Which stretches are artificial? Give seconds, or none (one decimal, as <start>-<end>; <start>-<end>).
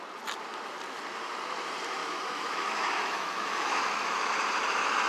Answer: 2.0-4.3